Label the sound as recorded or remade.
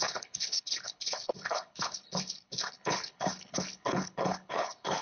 remade